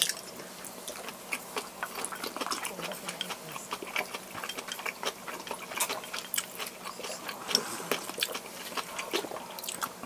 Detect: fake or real real